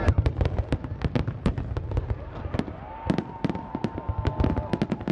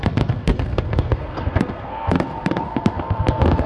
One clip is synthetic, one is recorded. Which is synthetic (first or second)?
second